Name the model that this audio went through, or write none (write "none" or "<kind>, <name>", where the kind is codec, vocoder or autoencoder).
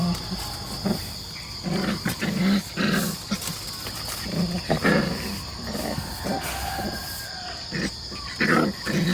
none